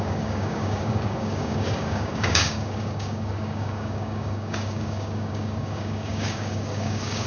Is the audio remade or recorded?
remade